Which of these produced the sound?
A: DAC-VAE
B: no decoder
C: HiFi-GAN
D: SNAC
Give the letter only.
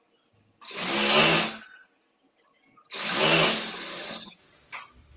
B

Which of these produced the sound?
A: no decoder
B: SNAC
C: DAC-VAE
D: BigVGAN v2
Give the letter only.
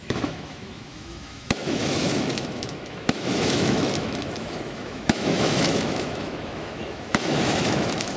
C